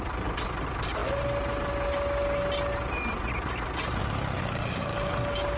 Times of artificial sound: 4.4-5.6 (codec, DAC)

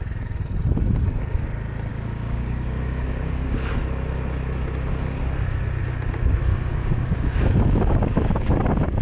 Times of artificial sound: 1.9-3.7 (codec, DAC); 6.5-8.6

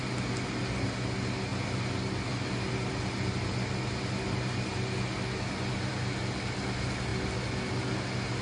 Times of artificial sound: none